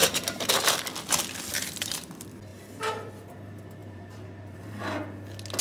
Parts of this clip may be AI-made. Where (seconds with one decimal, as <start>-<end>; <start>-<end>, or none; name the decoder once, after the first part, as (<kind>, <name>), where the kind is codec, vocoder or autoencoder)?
0.0-0.5 (vocoder, BigVGAN v2); 1.5-2.1; 2.5-3.1; 3.8-4.8